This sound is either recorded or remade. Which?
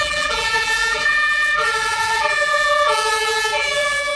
remade